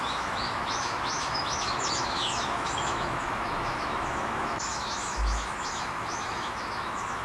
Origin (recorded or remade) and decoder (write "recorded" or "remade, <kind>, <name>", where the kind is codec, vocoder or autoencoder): remade, autoencoder, DAC-VAE